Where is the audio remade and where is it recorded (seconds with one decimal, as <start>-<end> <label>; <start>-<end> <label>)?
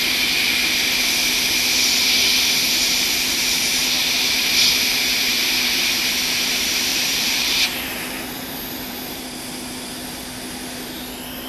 0.0-5.3 recorded; 5.3-6.1 remade; 6.1-6.9 recorded; 6.9-9.2 remade; 9.2-11.5 recorded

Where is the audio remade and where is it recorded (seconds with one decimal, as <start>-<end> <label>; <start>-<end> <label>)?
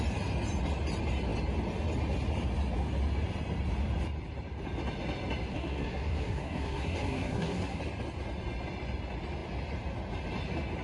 0.0-5.5 recorded; 5.5-7.8 remade; 7.8-10.8 recorded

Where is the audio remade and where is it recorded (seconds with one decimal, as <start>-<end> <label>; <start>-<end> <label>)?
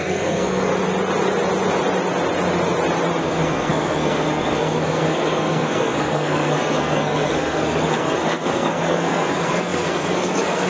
0.0-0.7 remade; 0.7-3.2 recorded; 3.2-10.7 remade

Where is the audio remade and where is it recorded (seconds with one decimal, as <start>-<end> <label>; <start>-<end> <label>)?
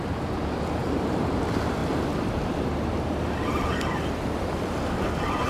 0.0-0.8 recorded; 0.8-1.4 remade; 1.4-1.8 recorded; 1.8-4.7 remade; 4.7-5.5 recorded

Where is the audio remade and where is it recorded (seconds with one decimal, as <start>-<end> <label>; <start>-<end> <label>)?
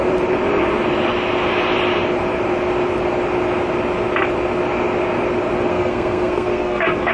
0.0-5.7 recorded; 5.7-7.1 remade